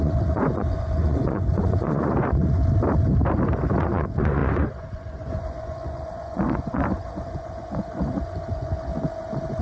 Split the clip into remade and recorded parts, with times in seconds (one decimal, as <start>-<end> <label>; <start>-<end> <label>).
0.0-2.6 remade; 2.6-3.8 recorded; 3.8-8.9 remade; 8.9-9.6 recorded